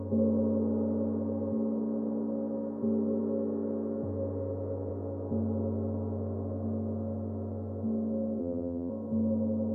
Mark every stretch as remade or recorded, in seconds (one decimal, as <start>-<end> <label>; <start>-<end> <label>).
0.0-8.4 recorded; 8.4-8.9 remade; 8.9-9.7 recorded